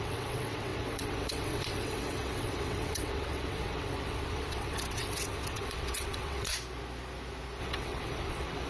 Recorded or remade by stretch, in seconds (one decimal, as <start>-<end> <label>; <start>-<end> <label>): 0.0-6.5 remade; 6.5-7.6 recorded; 7.6-8.7 remade